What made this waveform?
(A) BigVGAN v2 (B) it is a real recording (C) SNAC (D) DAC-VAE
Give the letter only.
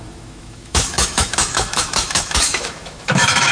D